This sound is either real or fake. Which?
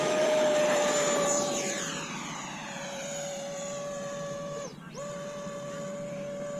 fake